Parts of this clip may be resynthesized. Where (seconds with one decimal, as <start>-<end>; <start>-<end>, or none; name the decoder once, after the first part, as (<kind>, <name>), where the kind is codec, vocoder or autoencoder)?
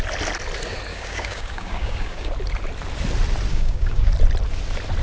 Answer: 0.9-2.3 (codec, DAC); 3.5-4.1